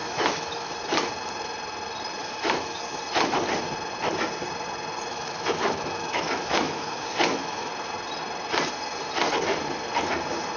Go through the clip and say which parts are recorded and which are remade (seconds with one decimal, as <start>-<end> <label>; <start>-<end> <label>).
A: 0.0-0.7 remade; 0.7-2.2 recorded; 2.2-2.8 remade; 2.8-5.1 recorded; 5.1-7.7 remade; 7.7-10.6 recorded